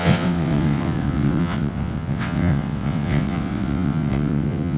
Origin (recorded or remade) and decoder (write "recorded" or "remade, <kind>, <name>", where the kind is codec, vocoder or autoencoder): remade, vocoder, WaveNeXt